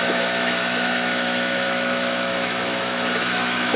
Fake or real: fake